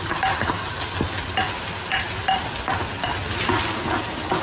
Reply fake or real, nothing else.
real